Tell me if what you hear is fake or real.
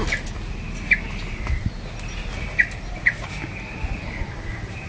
real